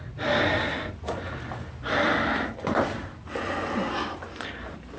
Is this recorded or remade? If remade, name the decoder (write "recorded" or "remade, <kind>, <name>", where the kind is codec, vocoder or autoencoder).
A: recorded